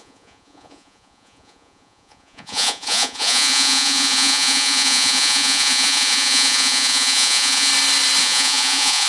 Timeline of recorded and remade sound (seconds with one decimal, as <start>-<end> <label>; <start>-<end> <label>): 0.0-7.7 remade; 7.7-8.2 recorded; 8.2-9.1 remade